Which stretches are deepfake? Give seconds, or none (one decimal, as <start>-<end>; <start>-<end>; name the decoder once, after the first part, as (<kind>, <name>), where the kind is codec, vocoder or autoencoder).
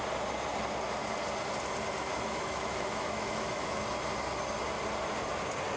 2.1-3.8 (autoencoder, DAC-VAE)